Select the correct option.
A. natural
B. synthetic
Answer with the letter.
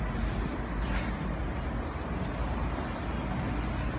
A